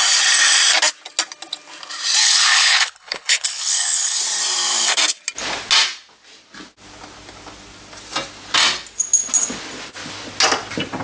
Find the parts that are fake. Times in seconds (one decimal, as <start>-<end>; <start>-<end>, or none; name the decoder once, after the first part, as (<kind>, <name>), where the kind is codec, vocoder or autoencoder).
2.2-4.2 (codec, HILCodec)